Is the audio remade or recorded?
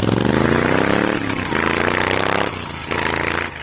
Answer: recorded